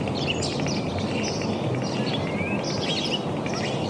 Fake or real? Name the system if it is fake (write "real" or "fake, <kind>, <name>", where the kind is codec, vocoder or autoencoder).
real